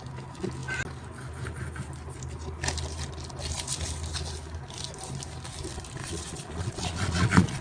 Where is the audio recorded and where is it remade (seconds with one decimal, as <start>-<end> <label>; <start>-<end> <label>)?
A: 0.0-6.0 recorded; 6.0-7.6 remade